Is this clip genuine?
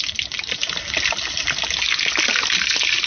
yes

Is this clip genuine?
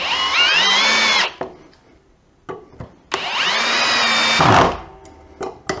yes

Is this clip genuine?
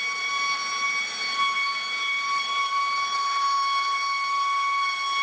yes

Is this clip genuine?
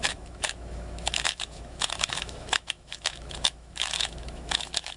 no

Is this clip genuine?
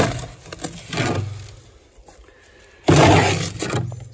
yes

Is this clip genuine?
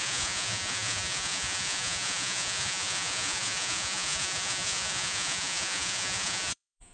no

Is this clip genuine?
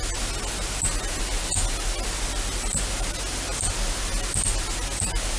yes